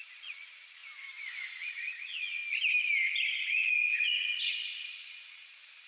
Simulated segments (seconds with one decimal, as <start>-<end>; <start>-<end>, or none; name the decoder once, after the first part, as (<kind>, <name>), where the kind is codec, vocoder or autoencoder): 0.0-0.8 (vocoder, Vocos); 1.5-2.4; 3.5-5.9